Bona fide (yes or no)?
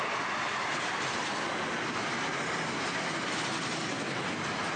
yes